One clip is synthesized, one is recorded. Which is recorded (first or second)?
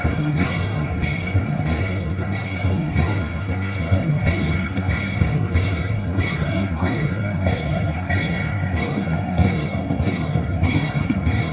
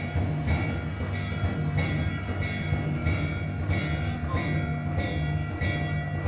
second